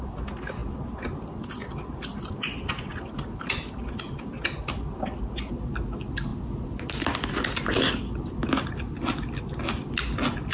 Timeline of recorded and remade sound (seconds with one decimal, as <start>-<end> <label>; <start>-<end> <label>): 0.0-6.3 recorded; 6.3-8.7 remade; 8.7-10.5 recorded